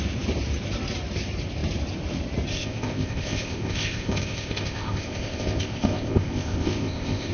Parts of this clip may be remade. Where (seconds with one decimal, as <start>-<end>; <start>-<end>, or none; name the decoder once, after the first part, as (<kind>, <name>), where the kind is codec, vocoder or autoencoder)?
2.5-7.3 (codec, ZipCodec)